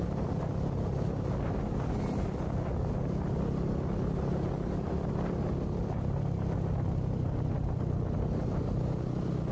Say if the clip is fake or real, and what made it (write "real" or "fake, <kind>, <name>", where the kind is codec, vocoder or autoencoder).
real